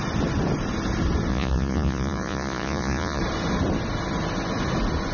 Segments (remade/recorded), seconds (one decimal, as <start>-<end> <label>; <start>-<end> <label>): 0.0-1.3 recorded; 1.3-3.2 remade; 3.2-5.1 recorded